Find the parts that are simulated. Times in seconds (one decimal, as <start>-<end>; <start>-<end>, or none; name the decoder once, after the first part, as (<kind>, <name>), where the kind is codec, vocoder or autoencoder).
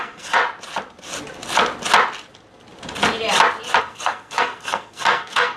0.0-0.4 (codec, SNAC); 3.8-5.6